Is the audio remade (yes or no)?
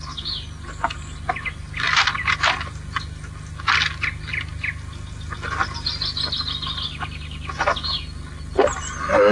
no